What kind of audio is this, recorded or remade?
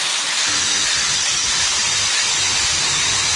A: recorded